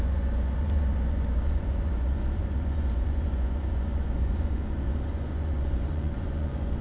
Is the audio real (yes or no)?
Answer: no